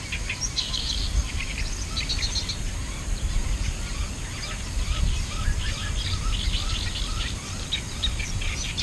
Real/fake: real